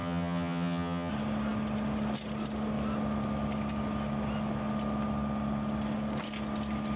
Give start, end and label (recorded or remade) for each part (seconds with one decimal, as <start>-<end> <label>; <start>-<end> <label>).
0.0-1.1 remade; 1.1-7.0 recorded